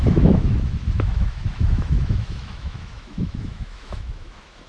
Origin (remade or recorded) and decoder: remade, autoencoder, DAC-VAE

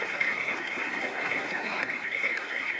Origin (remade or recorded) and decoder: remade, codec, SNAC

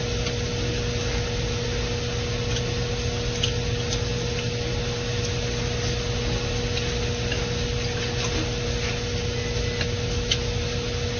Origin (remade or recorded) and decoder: recorded